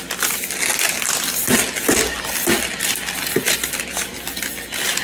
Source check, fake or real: real